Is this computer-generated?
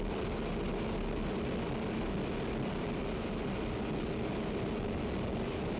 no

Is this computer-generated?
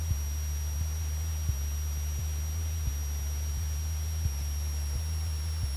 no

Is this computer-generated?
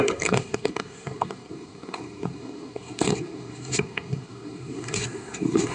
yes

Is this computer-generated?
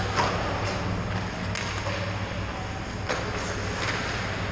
no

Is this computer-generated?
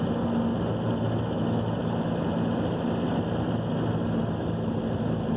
no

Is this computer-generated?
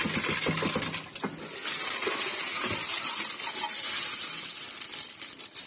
no